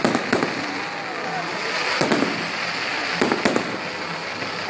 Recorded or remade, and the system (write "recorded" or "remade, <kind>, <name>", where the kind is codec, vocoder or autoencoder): recorded